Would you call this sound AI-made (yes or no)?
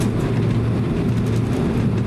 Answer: no